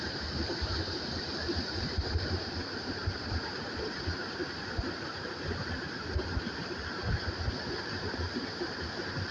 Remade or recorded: remade